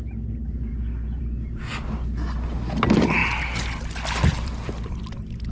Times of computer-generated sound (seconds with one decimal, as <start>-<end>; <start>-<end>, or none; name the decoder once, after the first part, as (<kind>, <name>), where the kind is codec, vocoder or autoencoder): 4.3-5.0 (vocoder, BigVGAN v2)